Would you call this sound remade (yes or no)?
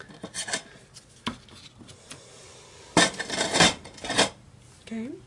no